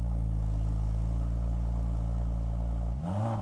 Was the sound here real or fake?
real